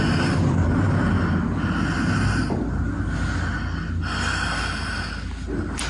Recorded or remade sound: recorded